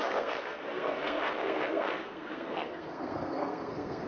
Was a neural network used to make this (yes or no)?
yes